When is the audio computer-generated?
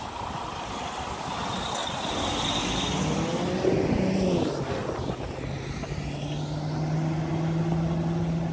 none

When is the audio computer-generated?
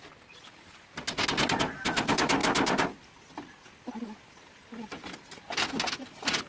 none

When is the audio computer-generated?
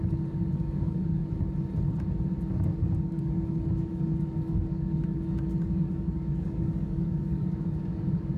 0.0-1.2 (codec, DAC); 2.5-8.4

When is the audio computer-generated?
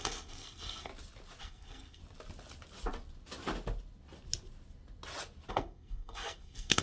0.0-0.9 (codec, SNAC); 1.4-2.0; 5.5-6.8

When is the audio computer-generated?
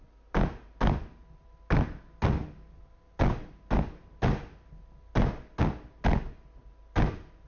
none